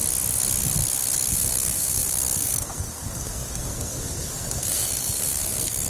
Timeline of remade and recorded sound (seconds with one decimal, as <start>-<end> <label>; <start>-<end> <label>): 0.0-1.3 recorded; 1.3-5.9 remade